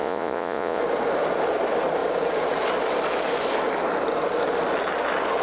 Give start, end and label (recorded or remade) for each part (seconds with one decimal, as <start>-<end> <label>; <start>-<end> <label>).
0.0-0.8 remade; 0.8-5.4 recorded